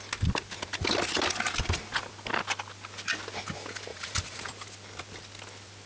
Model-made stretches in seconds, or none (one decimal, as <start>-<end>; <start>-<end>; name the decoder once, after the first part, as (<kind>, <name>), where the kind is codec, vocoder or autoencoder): 3.9-4.5 (vocoder, Vocos)